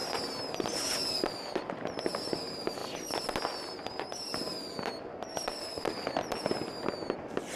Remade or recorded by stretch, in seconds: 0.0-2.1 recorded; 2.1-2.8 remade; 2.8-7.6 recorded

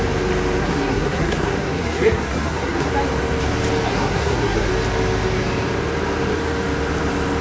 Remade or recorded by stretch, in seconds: 0.0-0.6 recorded; 0.6-2.9 remade; 2.9-3.9 recorded; 3.9-4.7 remade; 4.7-7.4 recorded

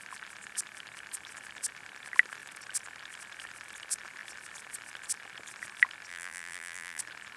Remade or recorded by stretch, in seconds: 0.0-6.1 recorded; 6.1-7.0 remade; 7.0-7.4 recorded

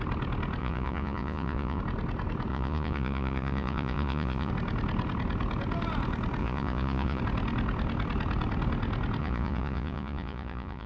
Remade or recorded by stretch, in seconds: 0.0-0.6 recorded; 0.6-1.8 remade; 1.8-2.5 recorded; 2.5-4.5 remade; 4.5-6.4 recorded; 6.4-7.2 remade; 7.2-9.2 recorded; 9.2-10.9 remade

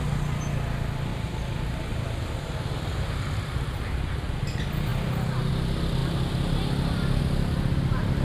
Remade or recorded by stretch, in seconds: 0.0-1.1 recorded; 1.1-4.1 remade; 4.1-8.2 recorded

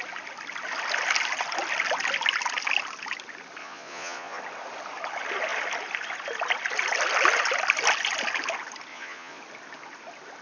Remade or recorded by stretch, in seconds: 0.0-3.6 recorded; 3.6-4.4 remade; 4.4-8.9 recorded; 8.9-9.4 remade; 9.4-10.4 recorded